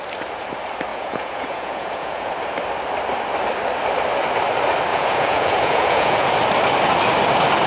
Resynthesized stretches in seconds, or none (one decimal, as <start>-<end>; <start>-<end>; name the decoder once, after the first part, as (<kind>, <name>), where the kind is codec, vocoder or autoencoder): 0.9-2.3 (vocoder, Vocos); 4.9-6.3